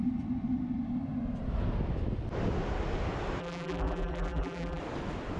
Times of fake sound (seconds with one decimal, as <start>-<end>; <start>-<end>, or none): 3.4-4.8